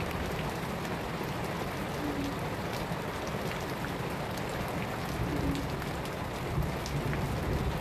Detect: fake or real real